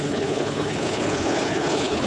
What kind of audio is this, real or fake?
fake